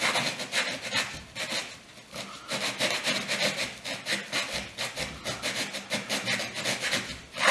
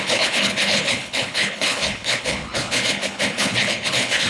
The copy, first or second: second